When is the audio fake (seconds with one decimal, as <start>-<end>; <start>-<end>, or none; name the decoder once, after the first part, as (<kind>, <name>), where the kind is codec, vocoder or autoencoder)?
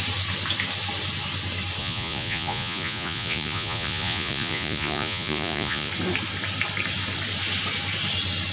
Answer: 1.8-5.9 (vocoder, Vocos)